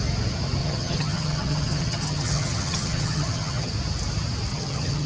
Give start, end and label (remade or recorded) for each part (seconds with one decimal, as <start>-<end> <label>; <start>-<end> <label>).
0.0-0.6 recorded; 0.6-3.7 remade; 3.7-4.5 recorded; 4.5-5.1 remade